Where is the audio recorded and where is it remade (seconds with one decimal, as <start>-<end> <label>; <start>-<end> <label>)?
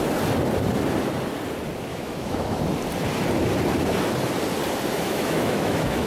0.0-1.9 recorded; 1.9-2.6 remade; 2.6-4.9 recorded; 4.9-6.1 remade